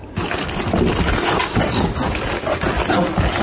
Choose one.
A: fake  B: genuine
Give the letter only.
B